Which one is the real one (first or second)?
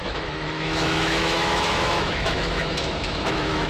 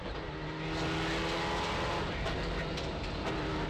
second